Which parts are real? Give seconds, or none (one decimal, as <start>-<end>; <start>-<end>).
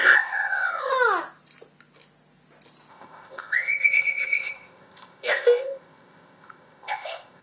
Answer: 0.9-2.9